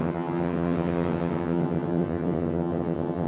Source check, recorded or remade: remade